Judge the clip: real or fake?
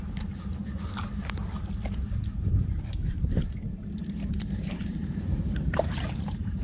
fake